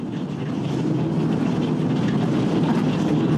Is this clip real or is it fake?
real